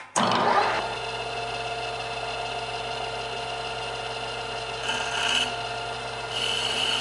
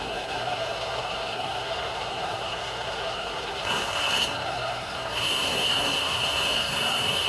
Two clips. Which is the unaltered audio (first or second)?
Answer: first